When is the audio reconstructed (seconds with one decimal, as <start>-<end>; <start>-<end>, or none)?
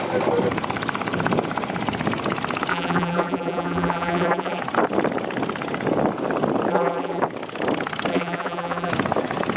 2.7-4.6; 6.7-7.2; 8.1-8.9